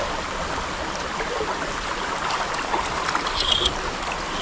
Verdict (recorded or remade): recorded